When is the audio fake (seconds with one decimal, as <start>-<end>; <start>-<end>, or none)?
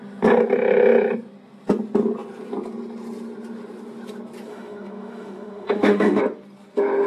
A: 4.5-6.2